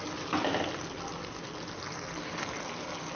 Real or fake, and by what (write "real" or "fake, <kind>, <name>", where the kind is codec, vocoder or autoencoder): real